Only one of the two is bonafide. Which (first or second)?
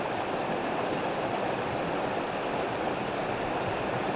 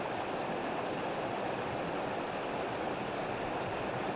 second